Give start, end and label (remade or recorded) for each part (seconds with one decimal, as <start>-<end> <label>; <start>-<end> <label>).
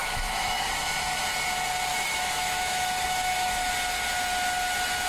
0.0-0.7 remade; 0.7-1.9 recorded; 1.9-3.7 remade; 3.7-5.1 recorded